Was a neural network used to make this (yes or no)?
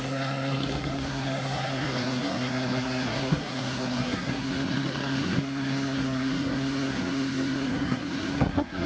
yes